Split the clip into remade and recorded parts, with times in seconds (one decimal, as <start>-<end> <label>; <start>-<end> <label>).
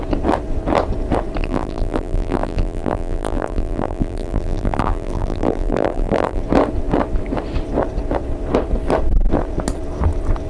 0.0-1.4 recorded; 1.4-6.4 remade; 6.4-10.5 recorded